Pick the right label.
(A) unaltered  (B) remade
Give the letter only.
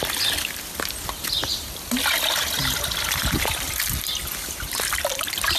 A